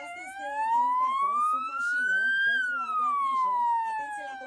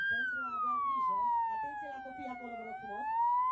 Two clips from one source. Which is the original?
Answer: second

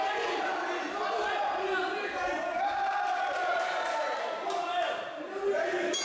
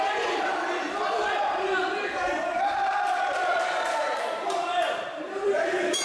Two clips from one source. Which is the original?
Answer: first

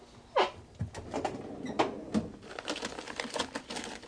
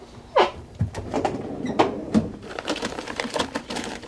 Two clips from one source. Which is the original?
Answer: first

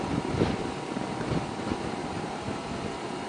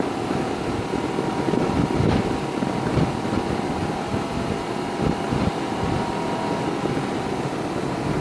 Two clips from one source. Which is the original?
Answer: second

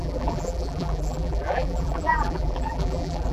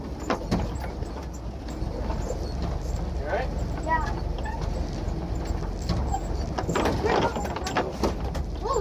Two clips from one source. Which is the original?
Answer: second